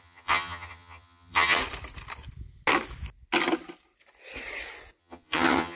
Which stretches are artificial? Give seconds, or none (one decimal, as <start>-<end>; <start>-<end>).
0.0-1.6; 5.0-5.7